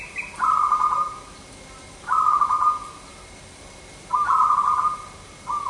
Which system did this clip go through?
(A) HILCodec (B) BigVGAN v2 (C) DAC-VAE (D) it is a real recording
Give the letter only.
D